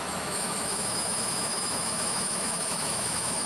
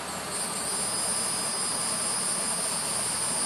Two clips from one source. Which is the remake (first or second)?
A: first